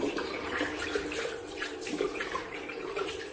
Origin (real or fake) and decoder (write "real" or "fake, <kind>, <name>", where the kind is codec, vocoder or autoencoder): fake, vocoder, BigVGAN v2